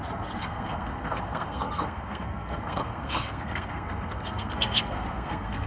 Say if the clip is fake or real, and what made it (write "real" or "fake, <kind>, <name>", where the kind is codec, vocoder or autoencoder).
fake, codec, SNAC